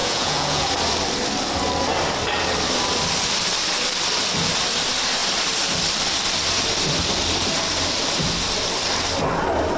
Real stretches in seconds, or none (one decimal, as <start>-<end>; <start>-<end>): 0.7-9.8